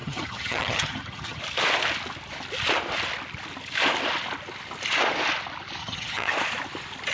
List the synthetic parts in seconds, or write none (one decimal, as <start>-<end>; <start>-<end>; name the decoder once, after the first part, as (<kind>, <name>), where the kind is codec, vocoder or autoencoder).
0.0-1.4 (vocoder, HiFi-GAN); 5.8-6.3